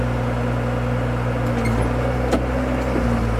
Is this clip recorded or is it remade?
recorded